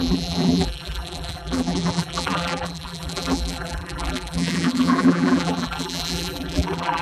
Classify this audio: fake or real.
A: fake